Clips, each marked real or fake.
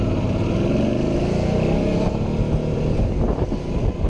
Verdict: real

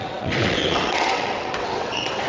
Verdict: fake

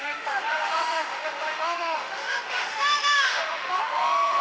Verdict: fake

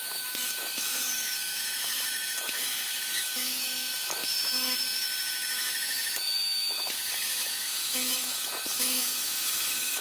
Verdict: fake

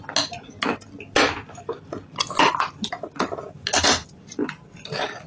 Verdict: real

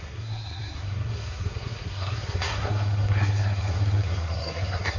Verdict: fake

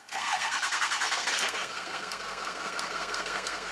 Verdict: fake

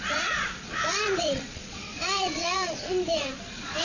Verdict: fake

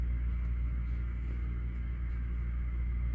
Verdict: fake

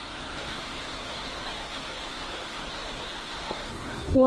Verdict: fake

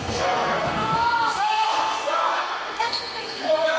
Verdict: fake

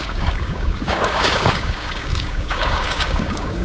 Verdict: fake